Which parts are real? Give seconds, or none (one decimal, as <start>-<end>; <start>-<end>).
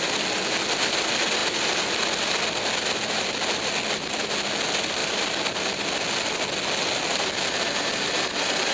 0.0-8.7